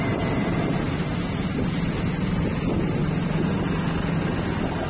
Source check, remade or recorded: recorded